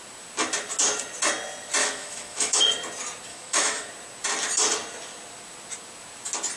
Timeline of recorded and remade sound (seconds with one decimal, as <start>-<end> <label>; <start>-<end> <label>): 0.0-1.8 recorded; 1.8-2.6 remade; 2.6-3.3 recorded; 3.3-3.9 remade; 3.9-6.6 recorded